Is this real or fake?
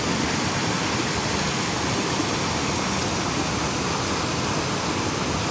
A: real